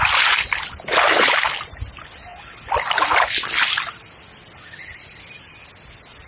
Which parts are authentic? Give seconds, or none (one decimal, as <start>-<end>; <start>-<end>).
0.0-6.3